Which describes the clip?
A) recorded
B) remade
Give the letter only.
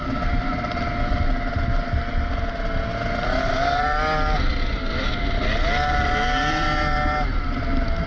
A